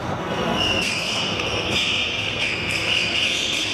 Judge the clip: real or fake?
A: fake